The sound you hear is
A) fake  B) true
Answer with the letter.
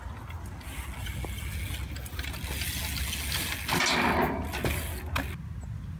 B